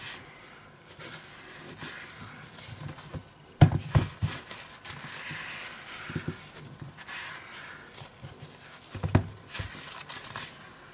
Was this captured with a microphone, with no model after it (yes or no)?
yes